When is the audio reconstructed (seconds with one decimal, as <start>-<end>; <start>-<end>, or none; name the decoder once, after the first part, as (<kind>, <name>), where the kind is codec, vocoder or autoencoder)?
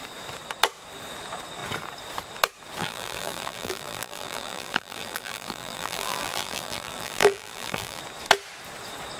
2.8-8.0 (vocoder, BigVGAN v2)